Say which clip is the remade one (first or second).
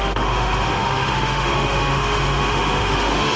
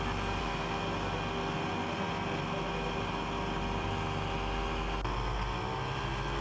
first